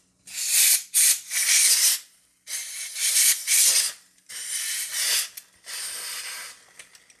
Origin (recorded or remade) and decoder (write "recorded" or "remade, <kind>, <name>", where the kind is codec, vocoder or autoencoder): recorded